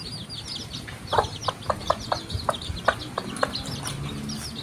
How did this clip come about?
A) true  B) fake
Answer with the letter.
A